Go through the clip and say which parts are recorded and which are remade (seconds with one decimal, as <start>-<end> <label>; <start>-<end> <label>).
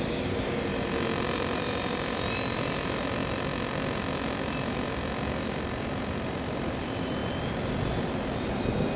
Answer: 0.0-9.0 recorded